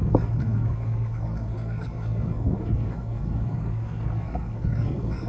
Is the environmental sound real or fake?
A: fake